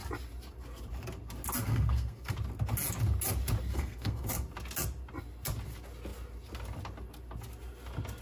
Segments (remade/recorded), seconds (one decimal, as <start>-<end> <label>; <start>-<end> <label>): 0.0-1.6 recorded; 1.6-2.3 remade; 2.3-3.7 recorded; 3.7-4.3 remade; 4.3-8.2 recorded